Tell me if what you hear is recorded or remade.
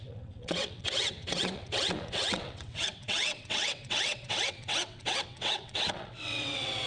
remade